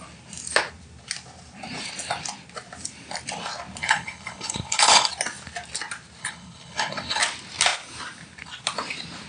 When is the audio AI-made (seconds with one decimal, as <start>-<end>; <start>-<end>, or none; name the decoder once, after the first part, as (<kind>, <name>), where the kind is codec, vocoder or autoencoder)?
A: 3.8-5.1 (codec, HILCodec); 6.2-7.2